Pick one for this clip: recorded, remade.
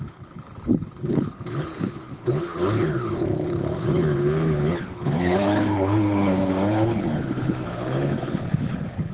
remade